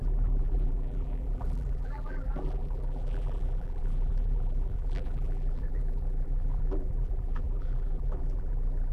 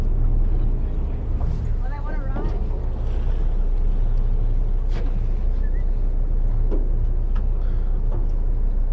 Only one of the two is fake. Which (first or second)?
first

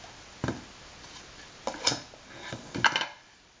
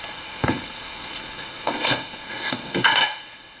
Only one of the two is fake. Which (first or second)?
second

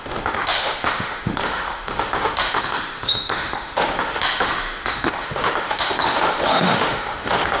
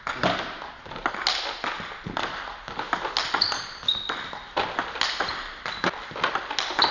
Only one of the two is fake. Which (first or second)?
first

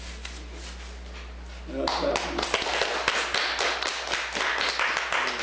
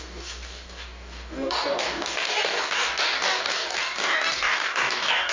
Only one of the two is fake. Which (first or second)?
second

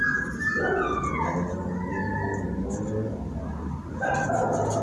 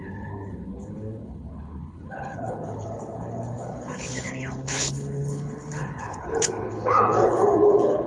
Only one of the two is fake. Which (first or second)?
second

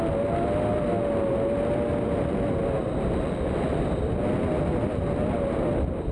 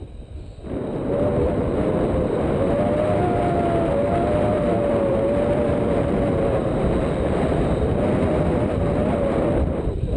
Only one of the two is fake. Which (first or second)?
second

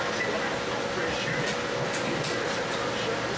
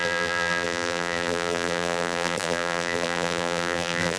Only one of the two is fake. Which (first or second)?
second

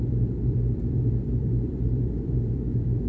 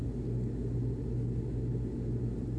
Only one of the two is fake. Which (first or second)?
first